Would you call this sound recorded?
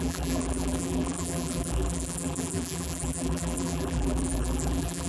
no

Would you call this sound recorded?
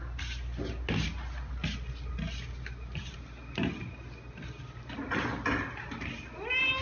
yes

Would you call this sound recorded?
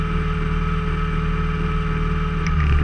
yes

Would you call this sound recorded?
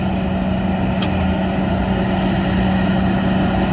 yes